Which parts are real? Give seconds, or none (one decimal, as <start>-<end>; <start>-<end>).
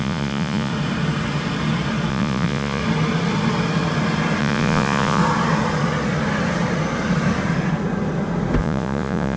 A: 0.7-2.1; 2.8-4.4; 5.2-8.6